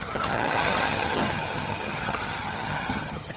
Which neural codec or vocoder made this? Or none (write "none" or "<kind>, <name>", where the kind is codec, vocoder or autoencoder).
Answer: vocoder, HiFi-GAN